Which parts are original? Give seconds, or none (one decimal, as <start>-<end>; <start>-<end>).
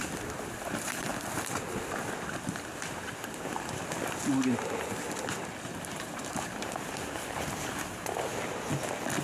0.0-0.6; 1.1-5.9; 8.3-9.2